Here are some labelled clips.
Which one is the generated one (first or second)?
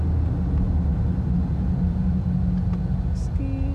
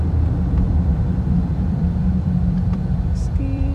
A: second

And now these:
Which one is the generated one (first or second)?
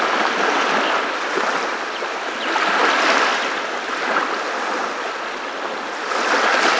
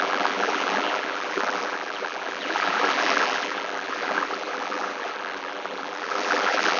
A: second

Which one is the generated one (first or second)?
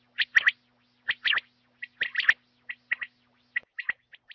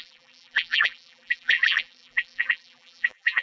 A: second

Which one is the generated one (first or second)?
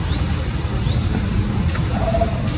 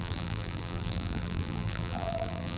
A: second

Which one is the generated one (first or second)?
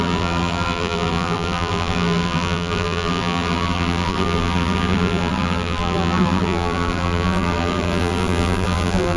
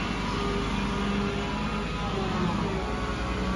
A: first